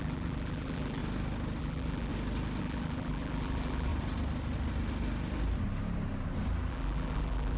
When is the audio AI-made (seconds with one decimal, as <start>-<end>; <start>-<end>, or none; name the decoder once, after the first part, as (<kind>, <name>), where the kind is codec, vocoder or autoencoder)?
0.0-1.0 (vocoder, BigVGAN v2); 1.6-2.1; 2.6-3.9; 6.7-7.6

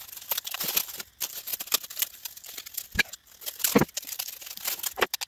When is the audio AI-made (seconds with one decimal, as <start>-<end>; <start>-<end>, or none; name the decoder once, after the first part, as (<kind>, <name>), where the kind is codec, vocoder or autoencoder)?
1.5-4.0 (vocoder, BigVGAN v2)

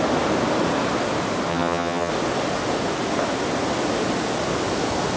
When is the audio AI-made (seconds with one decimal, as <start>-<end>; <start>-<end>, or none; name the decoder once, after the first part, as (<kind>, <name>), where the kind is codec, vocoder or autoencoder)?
1.5-2.1 (vocoder, HiFi-GAN)

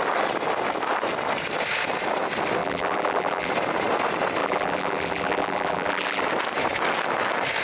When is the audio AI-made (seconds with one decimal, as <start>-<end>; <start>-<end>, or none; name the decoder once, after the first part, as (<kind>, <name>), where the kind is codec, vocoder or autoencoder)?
2.6-3.5 (vocoder, BigVGAN v2); 4.4-6.2

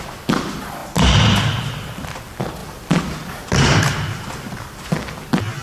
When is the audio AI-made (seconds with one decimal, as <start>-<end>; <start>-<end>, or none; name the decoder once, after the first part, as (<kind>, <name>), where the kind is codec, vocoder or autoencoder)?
none